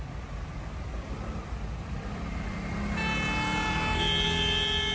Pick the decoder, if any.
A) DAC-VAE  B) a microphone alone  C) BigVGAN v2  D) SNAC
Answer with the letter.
B